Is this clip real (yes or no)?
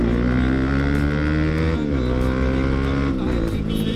yes